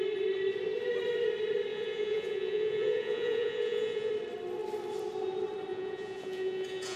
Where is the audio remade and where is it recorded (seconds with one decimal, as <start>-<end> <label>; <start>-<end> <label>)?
0.0-1.7 recorded; 1.7-4.1 remade; 4.1-5.7 recorded; 5.7-7.0 remade